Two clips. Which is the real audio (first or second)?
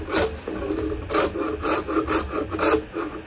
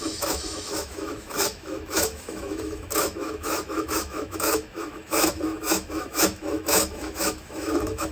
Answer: first